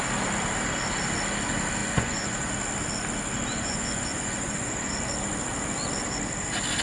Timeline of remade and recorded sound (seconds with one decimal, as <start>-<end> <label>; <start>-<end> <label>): 0.0-1.8 recorded; 1.8-2.5 remade; 2.5-3.5 recorded; 3.5-4.9 remade; 4.9-6.8 recorded